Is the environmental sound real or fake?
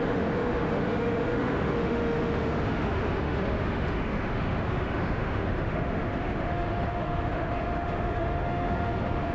fake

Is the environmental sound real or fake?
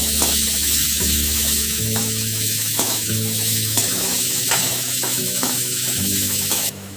fake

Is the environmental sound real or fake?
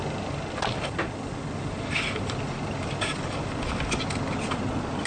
real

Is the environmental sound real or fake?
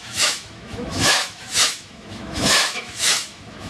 fake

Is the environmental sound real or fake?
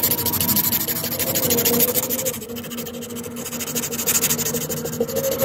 real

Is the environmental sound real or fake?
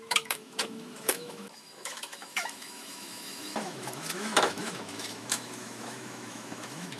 fake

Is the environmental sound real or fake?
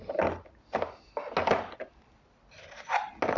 real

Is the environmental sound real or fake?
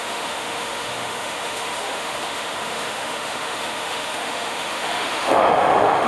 fake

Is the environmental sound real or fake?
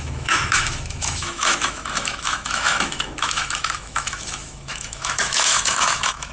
fake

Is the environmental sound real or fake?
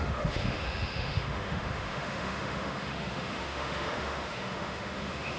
fake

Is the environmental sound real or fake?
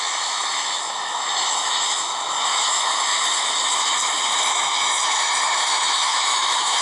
fake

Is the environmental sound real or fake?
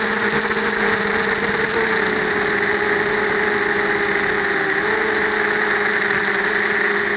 real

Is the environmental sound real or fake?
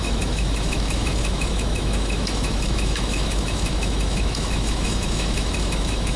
fake